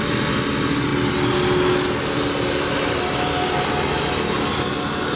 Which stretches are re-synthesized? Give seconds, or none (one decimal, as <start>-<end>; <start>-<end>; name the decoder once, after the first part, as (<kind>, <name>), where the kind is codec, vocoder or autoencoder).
none